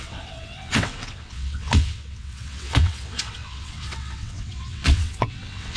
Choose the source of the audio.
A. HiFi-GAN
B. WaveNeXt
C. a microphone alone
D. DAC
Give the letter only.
B